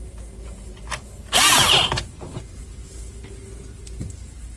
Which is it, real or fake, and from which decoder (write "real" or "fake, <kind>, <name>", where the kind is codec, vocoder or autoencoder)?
real